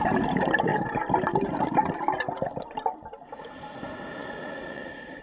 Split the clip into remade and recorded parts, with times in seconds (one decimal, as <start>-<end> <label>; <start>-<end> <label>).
0.0-4.2 recorded; 4.2-5.2 remade